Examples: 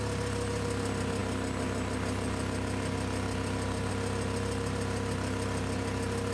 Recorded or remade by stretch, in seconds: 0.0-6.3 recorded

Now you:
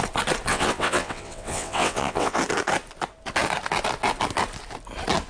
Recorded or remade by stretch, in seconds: 0.0-0.5 recorded; 0.5-2.4 remade; 2.4-5.3 recorded

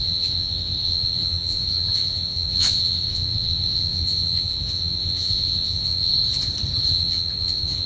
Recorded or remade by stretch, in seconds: 0.0-6.1 remade; 6.1-6.9 recorded; 6.9-7.9 remade

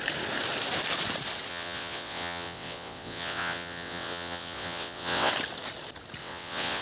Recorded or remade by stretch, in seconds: 0.0-1.5 recorded; 1.5-5.3 remade; 5.3-6.2 recorded; 6.2-6.8 remade

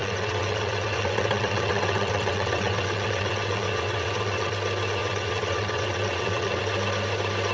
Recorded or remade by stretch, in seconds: 0.0-4.5 remade; 4.5-5.0 recorded; 5.0-6.6 remade; 6.6-7.5 recorded